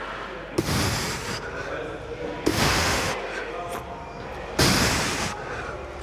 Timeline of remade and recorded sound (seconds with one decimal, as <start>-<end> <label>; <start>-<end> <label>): 0.0-2.5 recorded; 2.5-3.1 remade; 3.1-6.0 recorded